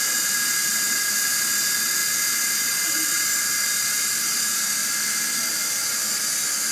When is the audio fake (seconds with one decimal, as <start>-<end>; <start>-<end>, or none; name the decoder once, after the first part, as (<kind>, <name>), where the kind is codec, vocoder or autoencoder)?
none